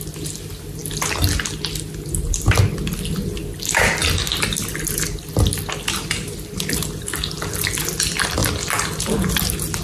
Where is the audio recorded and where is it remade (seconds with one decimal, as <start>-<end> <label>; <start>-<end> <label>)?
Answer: 0.0-9.8 recorded